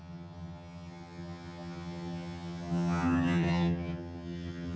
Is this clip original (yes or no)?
no